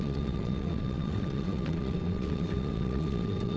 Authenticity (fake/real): fake